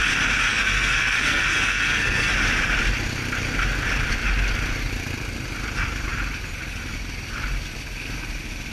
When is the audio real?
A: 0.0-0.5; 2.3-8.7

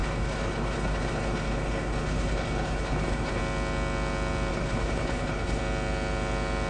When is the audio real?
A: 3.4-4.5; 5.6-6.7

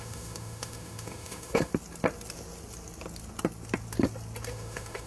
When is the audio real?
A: 1.7-4.5

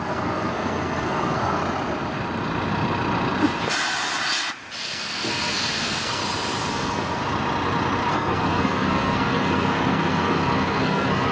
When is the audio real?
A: 1.6-4.8; 6.2-6.7; 7.2-8.1

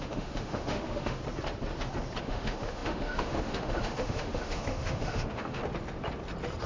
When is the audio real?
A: 1.2-2.2; 5.6-6.7